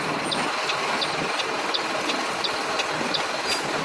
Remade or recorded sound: recorded